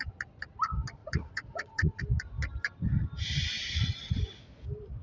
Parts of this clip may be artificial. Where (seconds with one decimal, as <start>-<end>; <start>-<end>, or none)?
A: 1.0-2.0; 3.6-4.2